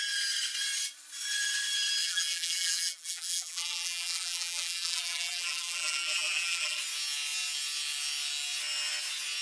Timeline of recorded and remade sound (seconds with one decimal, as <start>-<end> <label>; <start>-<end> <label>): 0.0-2.0 recorded; 2.0-6.8 remade; 6.8-9.4 recorded